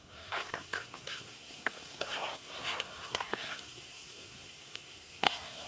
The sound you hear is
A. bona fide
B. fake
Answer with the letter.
B